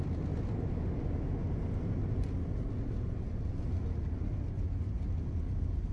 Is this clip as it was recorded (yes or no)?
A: yes